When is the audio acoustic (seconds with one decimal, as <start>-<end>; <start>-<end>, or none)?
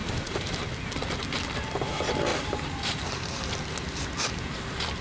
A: 0.5-2.3; 3.4-5.0